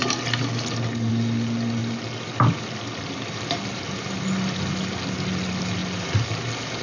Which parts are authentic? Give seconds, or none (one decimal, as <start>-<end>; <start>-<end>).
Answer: 0.0-6.8

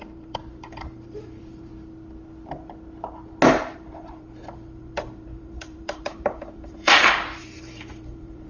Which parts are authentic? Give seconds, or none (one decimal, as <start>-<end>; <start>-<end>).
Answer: 1.7-3.5

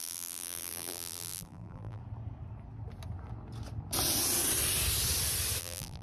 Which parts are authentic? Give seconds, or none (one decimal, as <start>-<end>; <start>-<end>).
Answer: 2.0-5.6

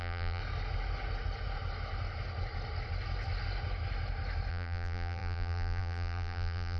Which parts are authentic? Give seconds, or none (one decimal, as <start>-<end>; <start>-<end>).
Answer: 0.4-4.5